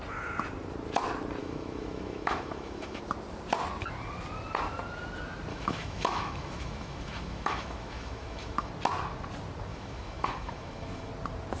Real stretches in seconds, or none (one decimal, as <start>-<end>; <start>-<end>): 0.0-1.4; 3.0-5.5; 8.7-9.7; 11.1-11.6